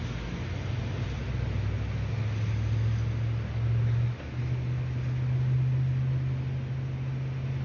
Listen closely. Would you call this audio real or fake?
real